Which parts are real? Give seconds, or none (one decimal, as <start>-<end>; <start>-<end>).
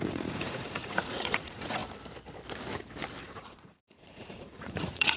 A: 1.8-3.2